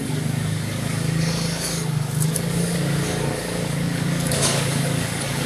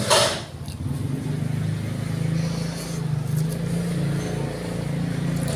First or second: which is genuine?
second